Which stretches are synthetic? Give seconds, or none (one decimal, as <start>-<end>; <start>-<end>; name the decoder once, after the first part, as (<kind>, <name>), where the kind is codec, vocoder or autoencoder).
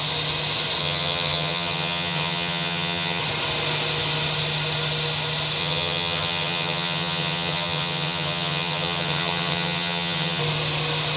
0.8-3.2 (vocoder, HiFi-GAN); 5.6-10.4